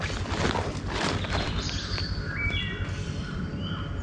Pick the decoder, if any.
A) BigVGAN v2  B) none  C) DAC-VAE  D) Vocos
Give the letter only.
B